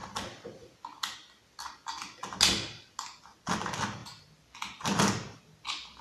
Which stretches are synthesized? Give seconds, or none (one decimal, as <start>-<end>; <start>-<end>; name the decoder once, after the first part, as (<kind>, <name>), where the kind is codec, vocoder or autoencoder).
4.0-5.4 (vocoder, BigVGAN v2)

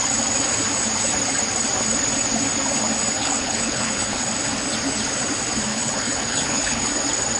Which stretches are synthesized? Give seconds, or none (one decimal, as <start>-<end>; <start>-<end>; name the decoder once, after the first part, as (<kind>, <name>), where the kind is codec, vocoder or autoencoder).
3.2-4.3 (codec, HILCodec); 5.7-6.9

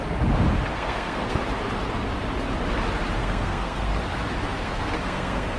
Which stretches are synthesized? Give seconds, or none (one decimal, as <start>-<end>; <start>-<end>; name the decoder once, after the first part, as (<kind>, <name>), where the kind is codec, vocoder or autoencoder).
0.7-1.4 (codec, SNAC); 3.2-3.9; 4.6-5.6

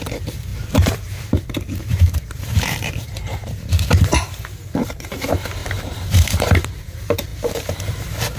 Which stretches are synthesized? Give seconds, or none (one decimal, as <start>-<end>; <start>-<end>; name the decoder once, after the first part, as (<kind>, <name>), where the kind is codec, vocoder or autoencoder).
0.0-8.4 (vocoder, BigVGAN v2)

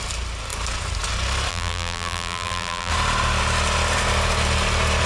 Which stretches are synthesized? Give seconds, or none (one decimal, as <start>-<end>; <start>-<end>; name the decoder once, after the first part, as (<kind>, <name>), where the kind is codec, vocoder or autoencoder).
1.5-2.9 (vocoder, BigVGAN v2)

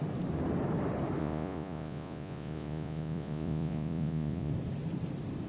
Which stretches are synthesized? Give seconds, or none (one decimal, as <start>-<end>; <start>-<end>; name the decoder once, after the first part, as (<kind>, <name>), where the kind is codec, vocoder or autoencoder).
1.2-4.5 (vocoder, Vocos)

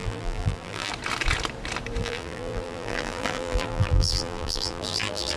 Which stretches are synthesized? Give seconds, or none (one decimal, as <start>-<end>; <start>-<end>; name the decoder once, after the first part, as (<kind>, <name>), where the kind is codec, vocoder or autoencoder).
0.0-0.9 (vocoder, BigVGAN v2); 2.0-5.4